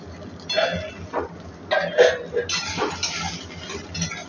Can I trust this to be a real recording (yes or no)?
yes